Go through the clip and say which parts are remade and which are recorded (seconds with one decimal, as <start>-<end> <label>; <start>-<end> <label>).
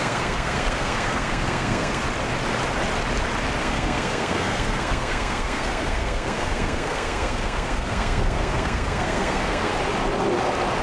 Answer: 0.0-2.0 remade; 2.0-3.6 recorded; 3.6-9.7 remade; 9.7-10.8 recorded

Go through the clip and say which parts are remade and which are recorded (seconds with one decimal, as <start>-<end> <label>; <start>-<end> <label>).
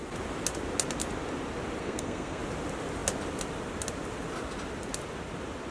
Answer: 0.0-1.8 recorded; 1.8-2.4 remade; 2.4-5.7 recorded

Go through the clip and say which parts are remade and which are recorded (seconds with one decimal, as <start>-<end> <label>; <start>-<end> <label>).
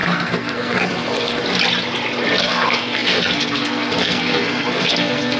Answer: 0.0-1.4 remade; 1.4-2.4 recorded; 2.4-5.4 remade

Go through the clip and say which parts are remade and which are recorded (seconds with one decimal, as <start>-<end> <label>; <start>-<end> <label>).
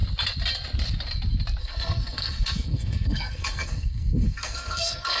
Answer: 0.0-1.6 recorded; 1.6-5.2 remade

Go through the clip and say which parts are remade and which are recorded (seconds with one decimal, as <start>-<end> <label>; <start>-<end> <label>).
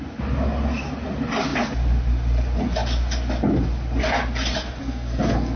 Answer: 0.0-4.8 recorded; 4.8-5.6 remade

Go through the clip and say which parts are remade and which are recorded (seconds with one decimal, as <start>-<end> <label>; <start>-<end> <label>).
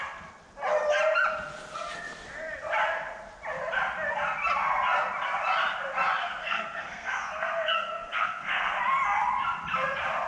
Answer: 0.0-6.2 recorded; 6.2-8.8 remade; 8.8-10.3 recorded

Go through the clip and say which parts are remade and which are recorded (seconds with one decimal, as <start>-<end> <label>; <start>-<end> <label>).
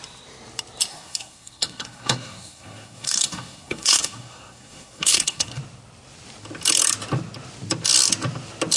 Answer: 0.0-0.9 recorded; 0.9-5.6 remade; 5.6-8.8 recorded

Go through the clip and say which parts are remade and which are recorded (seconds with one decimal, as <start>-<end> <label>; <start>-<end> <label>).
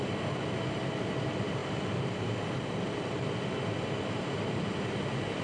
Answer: 0.0-5.4 recorded